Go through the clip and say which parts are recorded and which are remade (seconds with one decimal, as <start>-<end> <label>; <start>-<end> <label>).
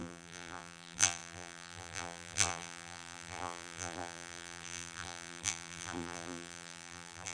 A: 0.0-7.3 remade